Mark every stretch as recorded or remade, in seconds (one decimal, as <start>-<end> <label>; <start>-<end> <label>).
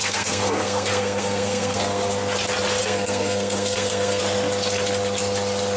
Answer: 0.0-2.1 remade; 2.1-2.8 recorded; 2.8-4.2 remade; 4.2-5.8 recorded